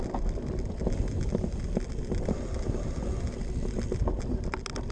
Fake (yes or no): no